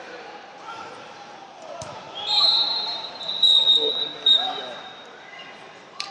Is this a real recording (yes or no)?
no